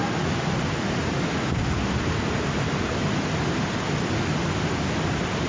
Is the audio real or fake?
real